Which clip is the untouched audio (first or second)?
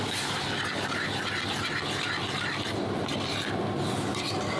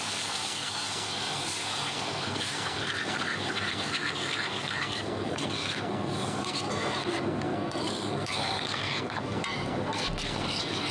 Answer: first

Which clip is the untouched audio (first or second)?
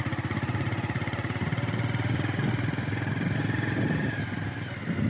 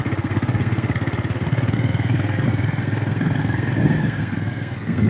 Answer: first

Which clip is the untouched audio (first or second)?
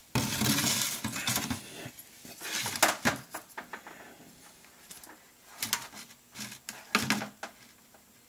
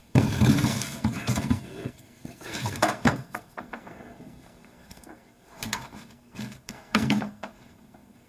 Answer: first